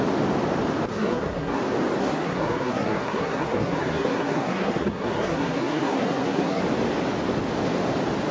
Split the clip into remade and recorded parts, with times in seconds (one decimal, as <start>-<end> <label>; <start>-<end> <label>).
0.0-0.9 recorded; 0.9-1.6 remade; 1.6-2.0 recorded; 2.0-6.6 remade; 6.6-8.3 recorded